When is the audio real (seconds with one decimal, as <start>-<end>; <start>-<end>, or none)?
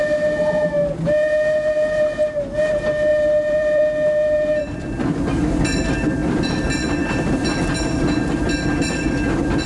0.0-3.1; 3.8-9.7